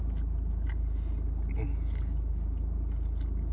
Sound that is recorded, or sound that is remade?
recorded